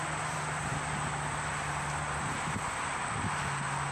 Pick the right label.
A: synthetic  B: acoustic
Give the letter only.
B